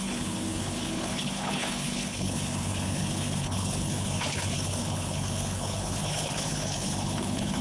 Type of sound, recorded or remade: remade